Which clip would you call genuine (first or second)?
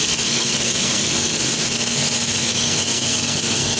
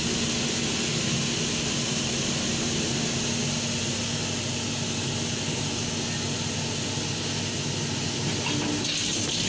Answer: second